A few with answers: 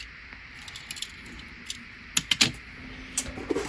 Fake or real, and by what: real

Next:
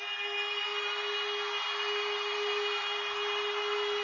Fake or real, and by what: real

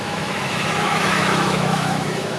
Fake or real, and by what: fake, autoencoder, DAC-VAE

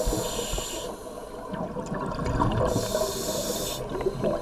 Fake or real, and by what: real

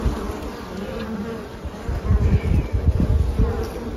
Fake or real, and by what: real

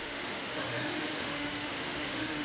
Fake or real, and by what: fake, autoencoder, DAC-VAE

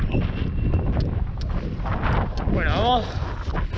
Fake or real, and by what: real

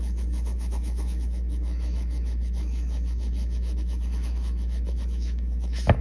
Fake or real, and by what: fake, autoencoder, DAC-VAE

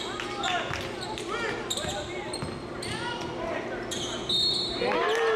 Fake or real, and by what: real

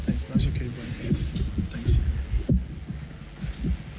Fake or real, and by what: real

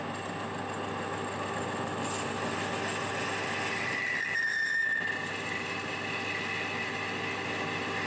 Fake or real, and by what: real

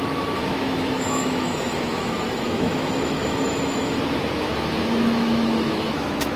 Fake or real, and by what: fake, autoencoder, DAC-VAE